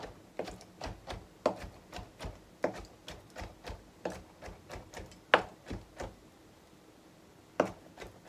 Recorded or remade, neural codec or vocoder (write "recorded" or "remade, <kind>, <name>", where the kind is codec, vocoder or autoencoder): recorded